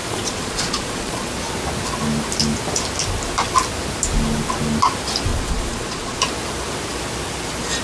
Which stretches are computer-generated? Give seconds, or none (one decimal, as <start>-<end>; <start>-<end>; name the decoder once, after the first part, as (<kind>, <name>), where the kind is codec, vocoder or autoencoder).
0.0-1.3 (vocoder, Vocos); 5.3-6.2